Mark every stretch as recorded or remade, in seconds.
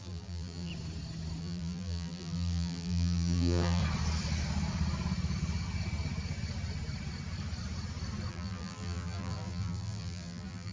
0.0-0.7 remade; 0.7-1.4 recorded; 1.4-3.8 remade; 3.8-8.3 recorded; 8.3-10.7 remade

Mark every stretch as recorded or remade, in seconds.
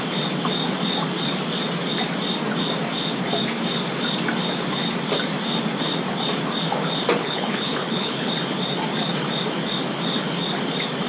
0.0-7.2 recorded; 7.2-8.3 remade; 8.3-11.1 recorded